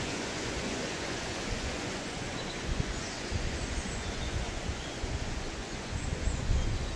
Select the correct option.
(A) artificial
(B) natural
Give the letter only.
A